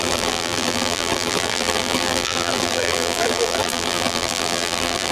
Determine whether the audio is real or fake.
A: fake